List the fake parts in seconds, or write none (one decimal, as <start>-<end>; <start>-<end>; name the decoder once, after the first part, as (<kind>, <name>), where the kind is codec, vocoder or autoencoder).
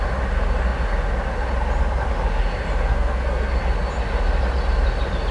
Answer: 2.9-3.5 (codec, SNAC)